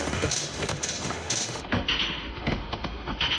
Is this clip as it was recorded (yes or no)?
no